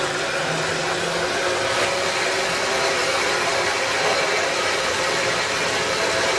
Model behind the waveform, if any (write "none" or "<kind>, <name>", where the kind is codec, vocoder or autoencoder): none